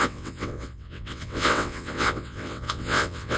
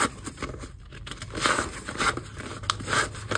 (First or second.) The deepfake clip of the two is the first